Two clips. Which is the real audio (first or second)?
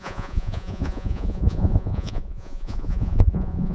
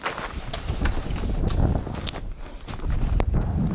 second